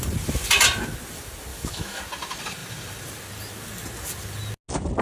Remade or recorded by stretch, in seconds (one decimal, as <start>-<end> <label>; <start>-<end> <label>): 0.0-1.5 recorded; 1.5-2.0 remade; 2.0-5.0 recorded